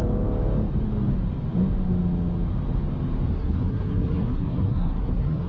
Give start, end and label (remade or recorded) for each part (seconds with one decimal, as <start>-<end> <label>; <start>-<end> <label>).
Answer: 0.0-3.3 recorded; 3.3-5.5 remade